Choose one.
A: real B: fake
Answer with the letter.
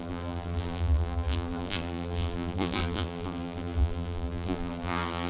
B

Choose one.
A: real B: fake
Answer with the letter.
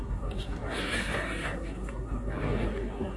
B